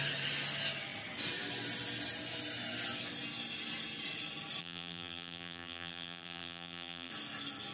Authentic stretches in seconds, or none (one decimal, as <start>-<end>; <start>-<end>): 0.0-4.6; 7.1-7.7